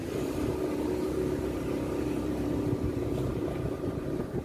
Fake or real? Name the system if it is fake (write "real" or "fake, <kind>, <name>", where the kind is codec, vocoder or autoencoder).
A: fake, vocoder, BigVGAN v2